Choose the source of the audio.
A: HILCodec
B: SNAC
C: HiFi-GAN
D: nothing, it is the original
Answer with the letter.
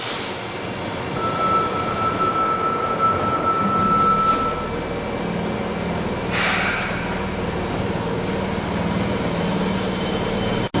D